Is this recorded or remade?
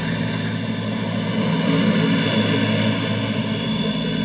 recorded